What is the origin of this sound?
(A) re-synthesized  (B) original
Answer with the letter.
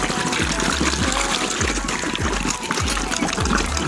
B